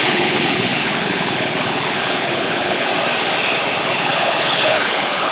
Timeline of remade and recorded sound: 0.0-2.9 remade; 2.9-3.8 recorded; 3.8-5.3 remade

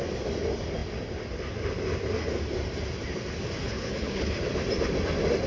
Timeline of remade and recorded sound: 0.0-3.6 recorded; 3.6-4.4 remade; 4.4-5.5 recorded